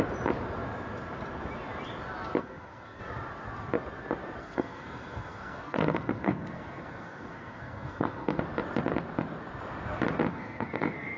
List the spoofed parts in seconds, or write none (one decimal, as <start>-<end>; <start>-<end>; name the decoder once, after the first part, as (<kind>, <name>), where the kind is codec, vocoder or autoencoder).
2.4-3.0 (codec, SNAC); 4.4-8.4; 10.3-11.2